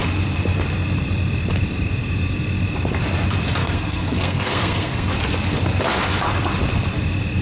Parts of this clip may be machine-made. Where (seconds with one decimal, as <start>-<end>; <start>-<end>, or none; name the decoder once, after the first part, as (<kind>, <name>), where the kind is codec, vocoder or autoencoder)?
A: 3.6-5.1 (codec, SNAC)